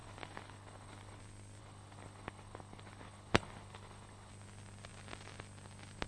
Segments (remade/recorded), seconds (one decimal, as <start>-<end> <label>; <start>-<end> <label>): 0.0-1.2 remade; 1.2-1.6 recorded; 1.6-4.3 remade; 4.3-6.1 recorded